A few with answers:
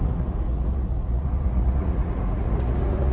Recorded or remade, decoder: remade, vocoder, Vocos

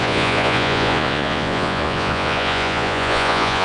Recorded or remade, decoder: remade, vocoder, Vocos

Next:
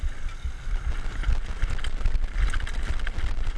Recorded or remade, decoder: recorded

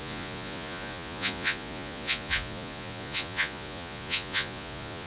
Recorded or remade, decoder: remade, vocoder, Vocos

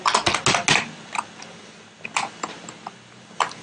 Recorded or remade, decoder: recorded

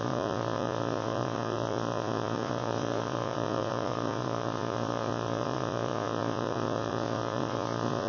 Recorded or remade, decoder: remade, vocoder, Vocos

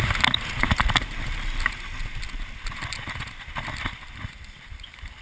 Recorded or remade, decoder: recorded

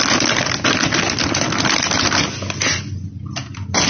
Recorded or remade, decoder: recorded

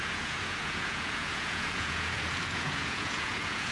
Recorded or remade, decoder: remade, vocoder, Vocos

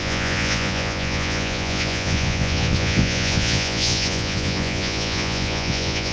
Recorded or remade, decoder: remade, vocoder, Vocos